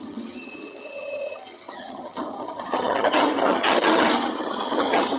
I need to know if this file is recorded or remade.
remade